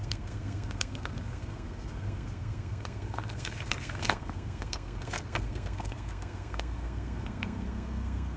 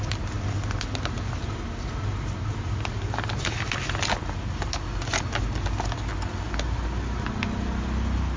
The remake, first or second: first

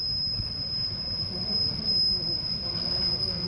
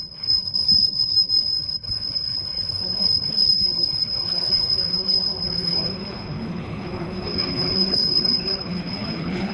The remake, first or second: second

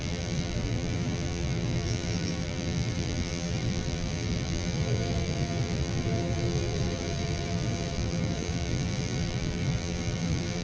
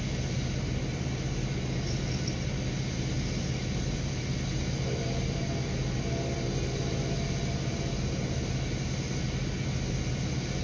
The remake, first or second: first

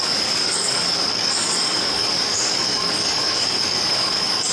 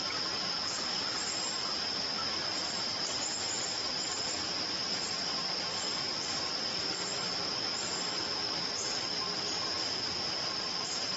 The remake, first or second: first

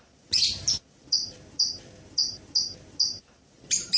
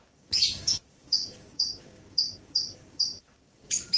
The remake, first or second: second